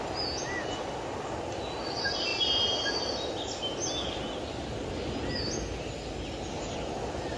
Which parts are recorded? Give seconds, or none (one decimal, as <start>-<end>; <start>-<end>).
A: 0.0-2.3; 2.9-7.4